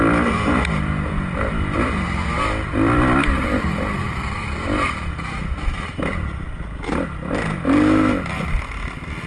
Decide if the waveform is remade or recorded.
remade